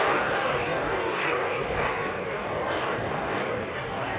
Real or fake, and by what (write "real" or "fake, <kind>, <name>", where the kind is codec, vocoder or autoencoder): fake, codec, DAC